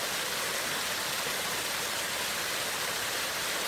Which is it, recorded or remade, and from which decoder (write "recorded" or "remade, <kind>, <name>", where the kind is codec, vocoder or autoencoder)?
recorded